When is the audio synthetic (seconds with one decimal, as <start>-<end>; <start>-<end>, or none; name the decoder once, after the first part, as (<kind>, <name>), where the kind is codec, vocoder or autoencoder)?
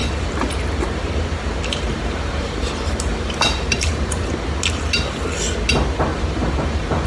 0.0-4.3 (vocoder, BigVGAN v2); 6.1-7.1